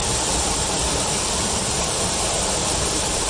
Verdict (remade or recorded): remade